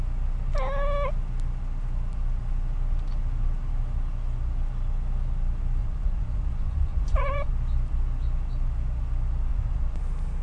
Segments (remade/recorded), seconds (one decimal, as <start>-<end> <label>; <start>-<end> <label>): 0.0-5.8 recorded; 5.8-7.5 remade; 7.5-9.5 recorded; 9.5-10.0 remade; 10.0-10.4 recorded